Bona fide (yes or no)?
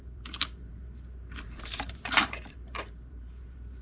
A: no